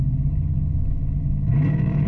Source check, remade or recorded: remade